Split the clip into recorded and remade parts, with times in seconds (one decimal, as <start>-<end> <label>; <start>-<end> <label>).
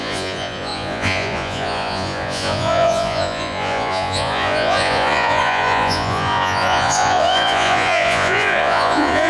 0.0-9.3 remade